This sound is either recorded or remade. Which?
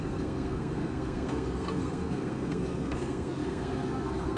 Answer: remade